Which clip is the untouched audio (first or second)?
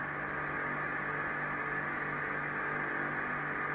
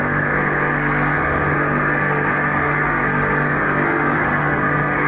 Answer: first